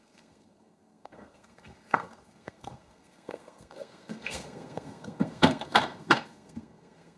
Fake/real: fake